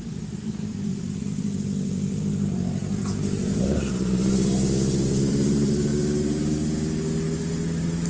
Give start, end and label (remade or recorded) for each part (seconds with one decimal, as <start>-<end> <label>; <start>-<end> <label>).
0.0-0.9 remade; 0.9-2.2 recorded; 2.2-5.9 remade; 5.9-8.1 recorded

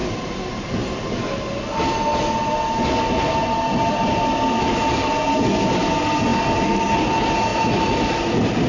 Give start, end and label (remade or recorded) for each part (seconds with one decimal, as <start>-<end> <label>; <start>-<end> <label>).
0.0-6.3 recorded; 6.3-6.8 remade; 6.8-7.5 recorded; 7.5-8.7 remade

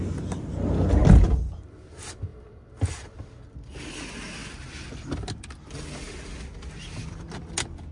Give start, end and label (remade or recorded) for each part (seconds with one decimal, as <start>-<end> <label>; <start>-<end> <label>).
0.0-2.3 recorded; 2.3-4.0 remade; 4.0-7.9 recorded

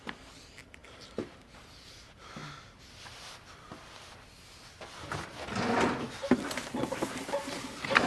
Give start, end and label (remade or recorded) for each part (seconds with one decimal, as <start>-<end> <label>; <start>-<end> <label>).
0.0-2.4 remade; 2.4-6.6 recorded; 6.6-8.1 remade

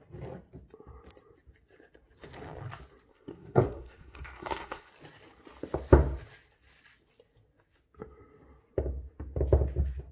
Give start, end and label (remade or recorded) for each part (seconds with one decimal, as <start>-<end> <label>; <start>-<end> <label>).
0.0-3.1 recorded; 3.1-4.9 remade; 4.9-10.1 recorded

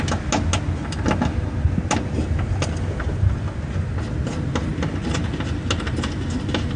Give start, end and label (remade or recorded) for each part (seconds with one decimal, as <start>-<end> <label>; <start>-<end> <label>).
0.0-6.8 recorded